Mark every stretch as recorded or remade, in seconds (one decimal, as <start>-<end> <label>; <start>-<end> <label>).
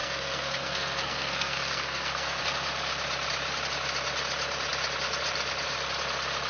0.0-2.4 remade; 2.4-6.5 recorded